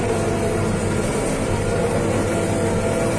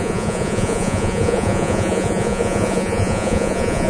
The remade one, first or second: second